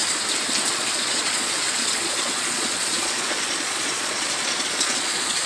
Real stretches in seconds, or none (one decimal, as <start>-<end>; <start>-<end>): 0.0-0.7